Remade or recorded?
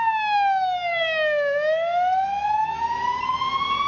recorded